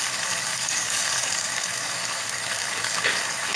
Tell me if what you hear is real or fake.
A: fake